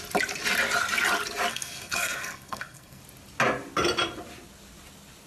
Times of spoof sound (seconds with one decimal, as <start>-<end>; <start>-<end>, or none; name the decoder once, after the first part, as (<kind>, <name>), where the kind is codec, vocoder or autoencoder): 1.5-3.0 (codec, SNAC)